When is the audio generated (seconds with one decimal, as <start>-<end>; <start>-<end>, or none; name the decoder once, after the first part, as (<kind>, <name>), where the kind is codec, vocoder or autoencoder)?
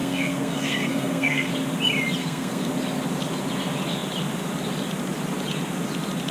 0.0-1.5 (codec, SNAC); 2.2-2.7